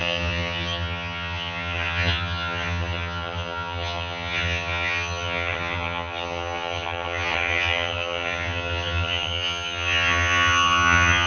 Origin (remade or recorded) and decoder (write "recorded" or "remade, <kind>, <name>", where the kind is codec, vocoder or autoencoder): remade, vocoder, HiFi-GAN